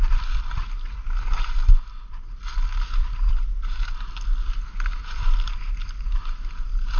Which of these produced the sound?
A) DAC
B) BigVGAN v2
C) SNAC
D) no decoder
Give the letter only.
D